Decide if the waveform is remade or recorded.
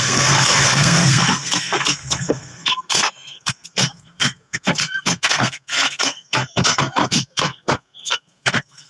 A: remade